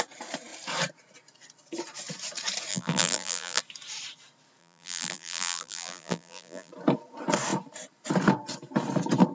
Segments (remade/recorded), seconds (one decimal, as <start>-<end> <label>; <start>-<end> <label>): 0.0-2.7 recorded; 2.7-3.6 remade; 3.6-4.6 recorded; 4.6-6.7 remade; 6.7-9.3 recorded